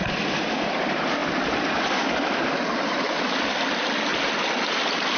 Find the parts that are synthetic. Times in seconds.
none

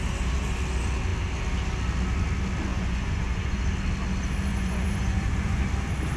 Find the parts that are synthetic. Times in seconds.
2.7-3.6 (vocoder, Vocos); 4.5-5.6

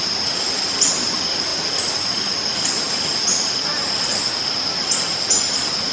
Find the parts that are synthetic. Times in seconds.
none

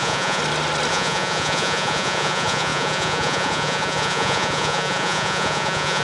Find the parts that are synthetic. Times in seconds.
0.0-0.4 (vocoder, Vocos); 0.9-6.0

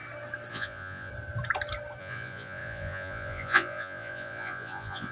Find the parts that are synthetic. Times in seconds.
0.5-1.1 (vocoder, Vocos); 2.0-5.1

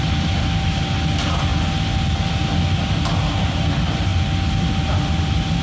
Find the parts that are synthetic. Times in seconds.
none